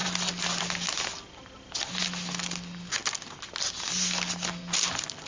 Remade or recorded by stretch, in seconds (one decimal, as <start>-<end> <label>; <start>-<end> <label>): 0.0-5.3 recorded